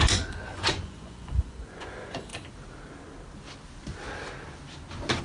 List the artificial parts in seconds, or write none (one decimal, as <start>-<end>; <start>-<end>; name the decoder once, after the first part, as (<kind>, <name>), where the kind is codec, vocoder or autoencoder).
0.0-2.3 (vocoder, Vocos)